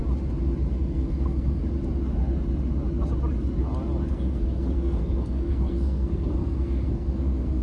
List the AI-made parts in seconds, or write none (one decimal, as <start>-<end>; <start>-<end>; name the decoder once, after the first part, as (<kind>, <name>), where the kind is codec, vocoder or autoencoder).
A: 0.7-1.6 (codec, SNAC); 4.1-7.6